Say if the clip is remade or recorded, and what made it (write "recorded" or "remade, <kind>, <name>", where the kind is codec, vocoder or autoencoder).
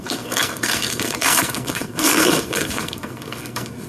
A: remade, codec, SNAC